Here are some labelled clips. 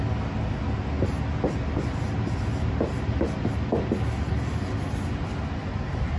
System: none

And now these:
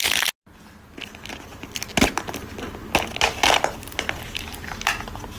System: none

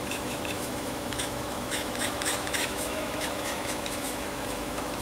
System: autoencoder, DAC-VAE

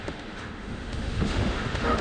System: autoencoder, DAC-VAE